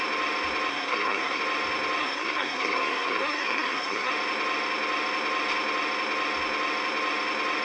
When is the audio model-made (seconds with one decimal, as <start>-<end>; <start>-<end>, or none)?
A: 0.7-1.4; 2.0-4.1